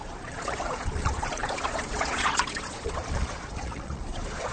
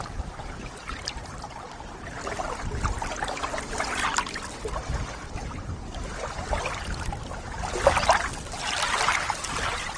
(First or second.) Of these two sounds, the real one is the second